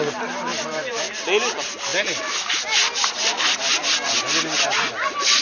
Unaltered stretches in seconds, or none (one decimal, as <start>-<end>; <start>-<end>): 0.0-0.5; 1.0-5.4